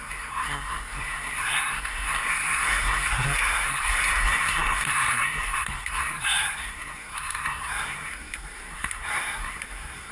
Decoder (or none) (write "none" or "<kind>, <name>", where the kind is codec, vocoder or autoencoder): codec, SNAC